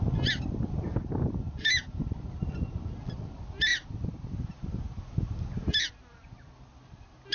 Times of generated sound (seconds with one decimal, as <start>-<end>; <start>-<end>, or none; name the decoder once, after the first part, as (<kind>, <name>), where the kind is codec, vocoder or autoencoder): 0.9-2.0 (vocoder, BigVGAN v2); 3.7-4.3